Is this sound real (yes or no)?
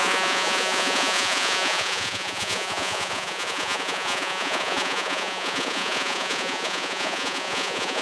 no